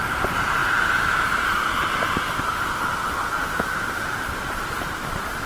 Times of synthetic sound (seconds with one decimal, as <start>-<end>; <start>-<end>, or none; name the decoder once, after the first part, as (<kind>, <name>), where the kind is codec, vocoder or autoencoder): none